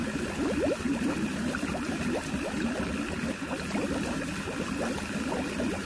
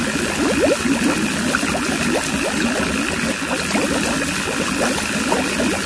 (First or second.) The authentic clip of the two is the second